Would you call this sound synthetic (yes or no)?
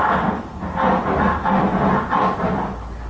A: no